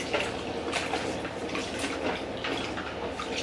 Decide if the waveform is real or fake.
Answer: real